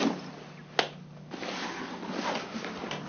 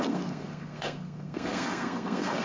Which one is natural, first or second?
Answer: first